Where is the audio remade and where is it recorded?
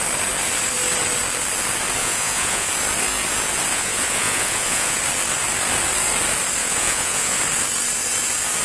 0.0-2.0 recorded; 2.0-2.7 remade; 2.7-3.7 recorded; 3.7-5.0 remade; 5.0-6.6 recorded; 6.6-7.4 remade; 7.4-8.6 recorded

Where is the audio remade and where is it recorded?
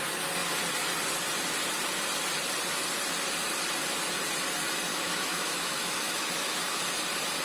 0.0-4.9 recorded; 4.9-6.8 remade; 6.8-7.4 recorded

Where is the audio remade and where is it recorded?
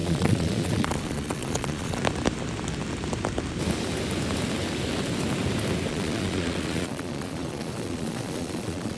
0.0-2.0 remade; 2.0-5.9 recorded; 5.9-9.0 remade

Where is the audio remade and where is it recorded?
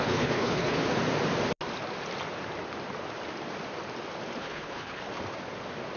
0.0-0.8 remade; 0.8-4.4 recorded; 4.4-5.0 remade; 5.0-6.0 recorded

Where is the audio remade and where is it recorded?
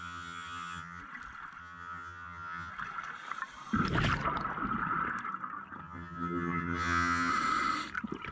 0.0-1.0 remade; 1.0-1.6 recorded; 1.6-2.7 remade; 2.7-5.8 recorded; 5.8-7.3 remade; 7.3-8.3 recorded